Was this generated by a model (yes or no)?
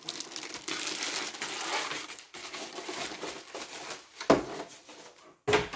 no